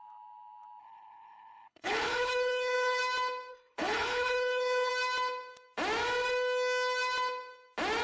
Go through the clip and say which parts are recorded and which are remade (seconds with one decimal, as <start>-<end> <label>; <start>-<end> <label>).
0.0-0.8 recorded; 0.8-3.0 remade; 3.0-3.5 recorded; 3.5-4.9 remade; 4.9-8.0 recorded